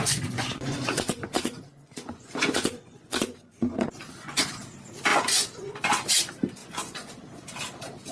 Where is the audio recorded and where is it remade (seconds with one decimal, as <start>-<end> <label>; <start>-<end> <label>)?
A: 0.0-4.6 remade; 4.6-5.1 recorded; 5.1-6.0 remade; 6.0-6.6 recorded; 6.6-7.1 remade; 7.1-8.1 recorded